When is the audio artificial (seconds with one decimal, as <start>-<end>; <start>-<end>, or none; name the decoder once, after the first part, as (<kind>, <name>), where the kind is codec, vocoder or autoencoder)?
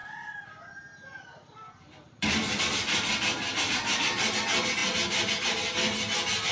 0.0-2.6 (vocoder, BigVGAN v2); 4.8-5.3